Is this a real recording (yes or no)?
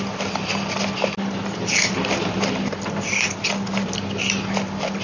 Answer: yes